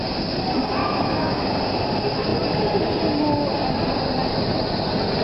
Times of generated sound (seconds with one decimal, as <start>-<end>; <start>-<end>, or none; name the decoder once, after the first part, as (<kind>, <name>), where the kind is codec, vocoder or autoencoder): 0.8-1.6 (autoencoder, DAC-VAE)